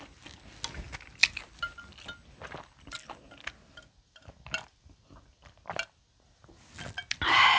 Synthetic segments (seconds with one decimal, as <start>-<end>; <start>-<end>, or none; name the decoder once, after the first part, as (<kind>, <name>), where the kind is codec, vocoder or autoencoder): none

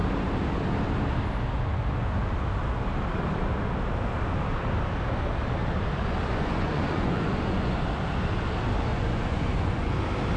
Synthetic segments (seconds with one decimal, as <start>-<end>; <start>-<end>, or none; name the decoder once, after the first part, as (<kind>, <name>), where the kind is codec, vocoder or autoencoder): 6.3-7.9 (vocoder, Vocos); 8.9-9.9

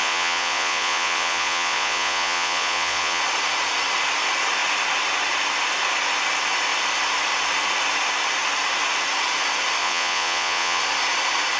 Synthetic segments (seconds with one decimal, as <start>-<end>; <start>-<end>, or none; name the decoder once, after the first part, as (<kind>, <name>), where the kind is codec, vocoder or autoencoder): 0.0-3.2 (vocoder, Vocos); 9.8-10.8

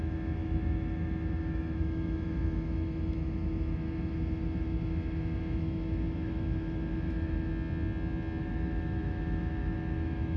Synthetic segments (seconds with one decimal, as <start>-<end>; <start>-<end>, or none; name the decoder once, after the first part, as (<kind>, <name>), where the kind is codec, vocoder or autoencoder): 0.0-7.5 (autoencoder, DAC-VAE); 8.4-10.4